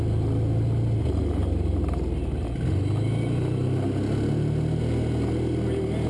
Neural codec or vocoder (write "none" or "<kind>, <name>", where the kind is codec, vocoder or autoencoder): none